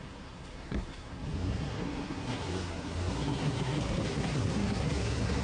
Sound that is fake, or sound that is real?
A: fake